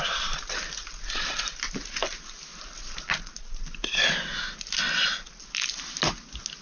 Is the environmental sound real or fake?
real